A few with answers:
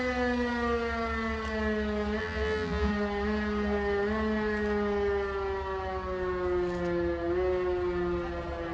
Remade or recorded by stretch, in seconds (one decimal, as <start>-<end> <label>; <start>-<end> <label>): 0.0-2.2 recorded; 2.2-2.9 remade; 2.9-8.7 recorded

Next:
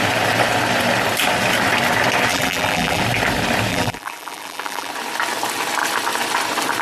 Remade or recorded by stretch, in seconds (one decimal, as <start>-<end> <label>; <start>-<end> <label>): 0.0-2.3 recorded; 2.3-3.0 remade; 3.0-3.7 recorded; 3.7-4.9 remade; 4.9-6.8 recorded

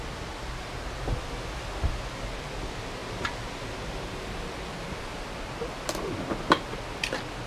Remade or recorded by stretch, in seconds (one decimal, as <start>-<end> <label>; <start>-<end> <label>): 0.0-7.5 recorded

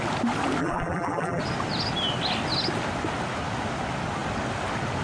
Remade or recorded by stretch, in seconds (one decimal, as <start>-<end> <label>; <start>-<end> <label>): 0.0-0.6 recorded; 0.6-1.4 remade; 1.4-5.0 recorded